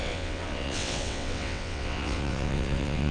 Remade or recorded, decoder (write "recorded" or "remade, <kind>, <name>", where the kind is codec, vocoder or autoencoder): remade, vocoder, WaveNeXt